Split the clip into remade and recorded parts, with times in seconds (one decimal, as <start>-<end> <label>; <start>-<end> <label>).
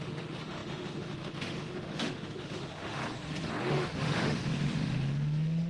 0.0-3.0 remade; 3.0-3.7 recorded; 3.7-5.7 remade